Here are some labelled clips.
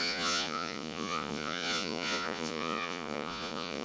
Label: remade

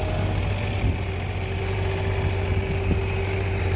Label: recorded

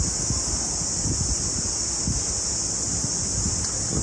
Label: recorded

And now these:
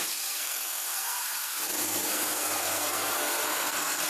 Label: remade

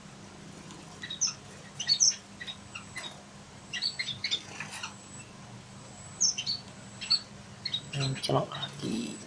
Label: recorded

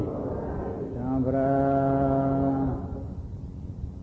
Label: recorded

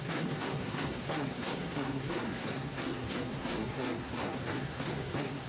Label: remade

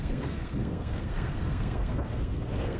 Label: remade